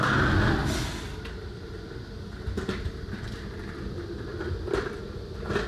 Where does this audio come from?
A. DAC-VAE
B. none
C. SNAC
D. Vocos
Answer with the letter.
B